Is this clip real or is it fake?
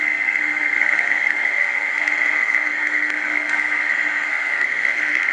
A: fake